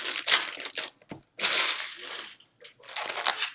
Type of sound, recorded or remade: recorded